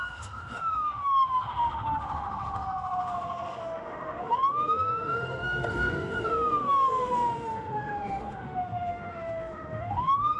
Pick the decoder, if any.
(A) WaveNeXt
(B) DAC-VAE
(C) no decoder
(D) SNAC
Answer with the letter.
B